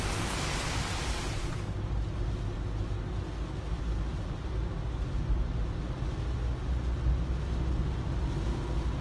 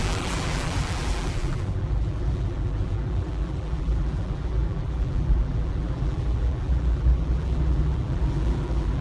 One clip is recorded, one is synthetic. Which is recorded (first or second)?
first